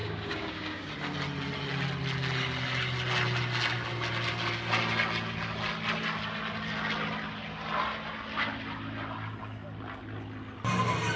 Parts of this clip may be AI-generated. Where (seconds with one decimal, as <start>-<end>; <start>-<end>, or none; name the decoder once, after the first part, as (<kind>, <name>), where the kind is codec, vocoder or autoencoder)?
0.0-0.9 (codec, DAC)